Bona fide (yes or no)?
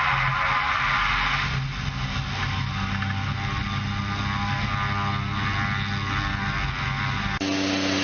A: yes